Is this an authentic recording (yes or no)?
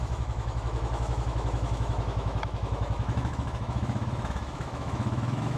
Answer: no